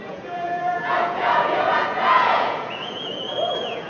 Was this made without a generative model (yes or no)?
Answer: no